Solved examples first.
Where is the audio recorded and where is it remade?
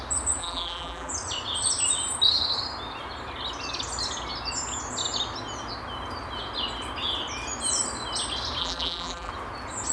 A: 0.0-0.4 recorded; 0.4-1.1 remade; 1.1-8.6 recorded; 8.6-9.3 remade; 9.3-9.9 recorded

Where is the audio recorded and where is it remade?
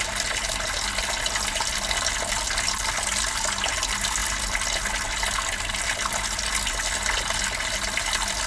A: 0.0-8.5 recorded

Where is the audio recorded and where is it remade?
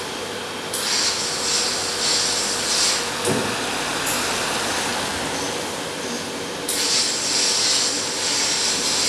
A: 0.0-0.4 remade; 0.4-3.9 recorded; 3.9-4.9 remade; 4.9-8.6 recorded; 8.6-9.1 remade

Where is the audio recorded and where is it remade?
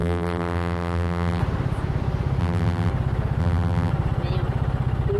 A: 0.0-1.4 remade; 1.4-2.4 recorded; 2.4-2.9 remade; 2.9-3.4 recorded; 3.4-3.9 remade; 3.9-5.2 recorded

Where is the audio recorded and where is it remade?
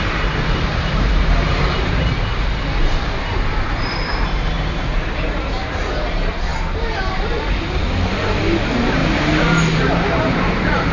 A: 0.0-6.5 remade; 6.5-7.1 recorded; 7.1-7.8 remade; 7.8-8.6 recorded; 8.6-9.0 remade; 9.0-9.8 recorded; 9.8-10.9 remade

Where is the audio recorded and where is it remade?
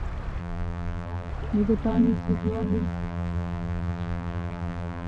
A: 0.0-0.4 recorded; 0.4-1.3 remade; 1.3-1.9 recorded; 1.9-5.1 remade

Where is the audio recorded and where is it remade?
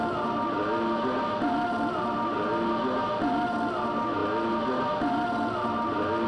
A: 0.0-6.3 recorded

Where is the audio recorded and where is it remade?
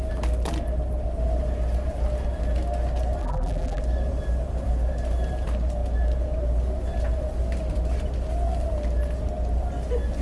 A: 0.0-3.2 recorded; 3.2-3.8 remade; 3.8-10.2 recorded